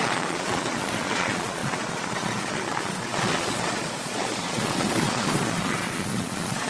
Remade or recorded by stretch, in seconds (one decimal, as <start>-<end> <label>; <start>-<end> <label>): 0.0-6.7 remade